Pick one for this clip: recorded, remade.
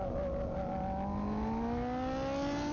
recorded